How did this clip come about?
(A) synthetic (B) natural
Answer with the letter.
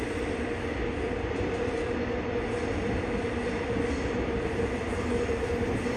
B